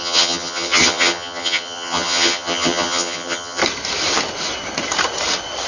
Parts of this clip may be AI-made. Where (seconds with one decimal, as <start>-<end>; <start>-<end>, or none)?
0.0-3.6